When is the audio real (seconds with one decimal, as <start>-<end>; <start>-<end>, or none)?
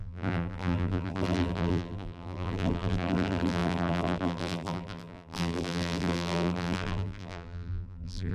none